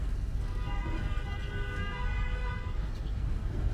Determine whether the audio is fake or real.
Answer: fake